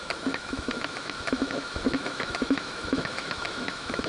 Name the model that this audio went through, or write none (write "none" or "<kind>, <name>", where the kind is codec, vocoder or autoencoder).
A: autoencoder, DAC-VAE